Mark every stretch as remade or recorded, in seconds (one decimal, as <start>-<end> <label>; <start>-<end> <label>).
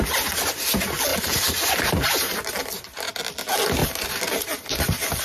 0.0-1.1 recorded; 1.1-3.0 remade; 3.0-3.8 recorded; 3.8-4.8 remade; 4.8-5.2 recorded